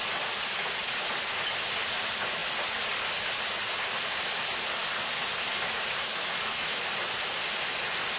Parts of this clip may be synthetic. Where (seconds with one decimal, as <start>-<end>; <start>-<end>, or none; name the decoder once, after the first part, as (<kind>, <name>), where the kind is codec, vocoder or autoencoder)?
6.1-6.9 (autoencoder, DAC-VAE)